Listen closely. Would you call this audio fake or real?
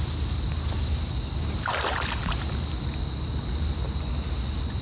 real